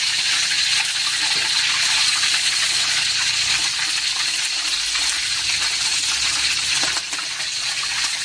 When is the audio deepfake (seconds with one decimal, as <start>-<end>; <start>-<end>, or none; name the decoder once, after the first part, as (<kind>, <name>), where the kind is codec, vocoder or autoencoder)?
0.0-0.7 (vocoder, Vocos); 1.5-3.7; 7.3-8.2